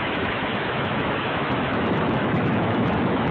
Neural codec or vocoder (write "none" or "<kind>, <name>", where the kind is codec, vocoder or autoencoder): autoencoder, DAC-VAE